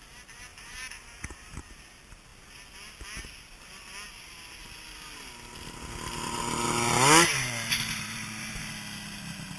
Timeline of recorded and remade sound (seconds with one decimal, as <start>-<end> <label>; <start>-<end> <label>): 0.0-0.5 recorded; 0.5-1.6 remade; 1.6-7.3 recorded; 7.3-8.7 remade; 8.7-9.6 recorded